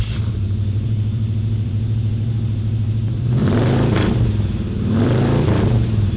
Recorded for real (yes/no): no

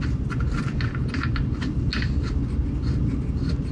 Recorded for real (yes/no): yes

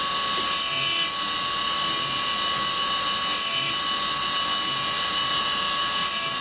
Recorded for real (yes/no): yes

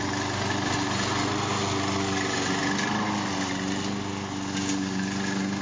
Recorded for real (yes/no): yes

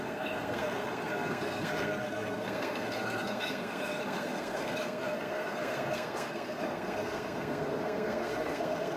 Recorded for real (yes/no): no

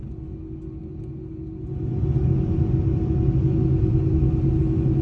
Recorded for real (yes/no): yes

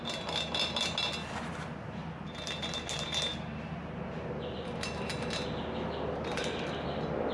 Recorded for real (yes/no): yes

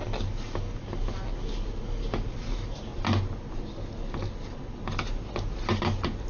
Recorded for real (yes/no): yes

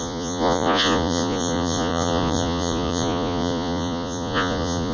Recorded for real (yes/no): no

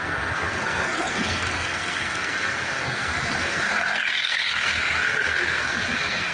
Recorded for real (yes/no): no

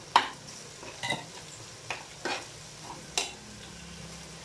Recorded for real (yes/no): yes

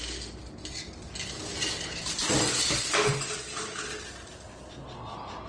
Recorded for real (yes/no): yes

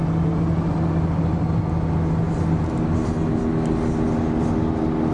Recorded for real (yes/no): yes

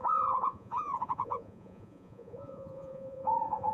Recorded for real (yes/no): no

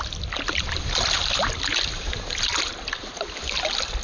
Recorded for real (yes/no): yes